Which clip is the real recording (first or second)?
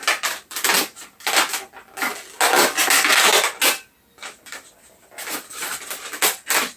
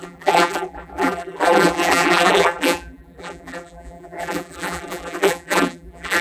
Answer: first